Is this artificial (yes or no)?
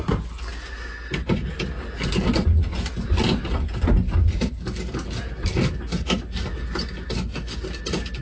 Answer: no